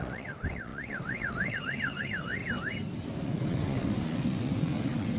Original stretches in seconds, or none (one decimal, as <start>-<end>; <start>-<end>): 2.4-3.2